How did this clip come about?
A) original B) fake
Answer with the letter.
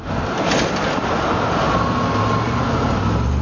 A